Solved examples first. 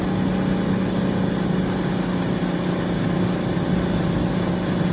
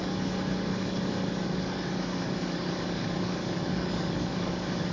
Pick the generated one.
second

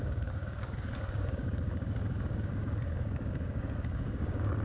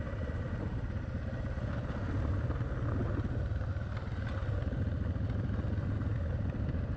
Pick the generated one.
first